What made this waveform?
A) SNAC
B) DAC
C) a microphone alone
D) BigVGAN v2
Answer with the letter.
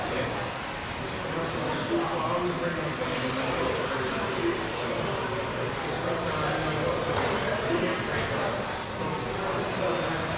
C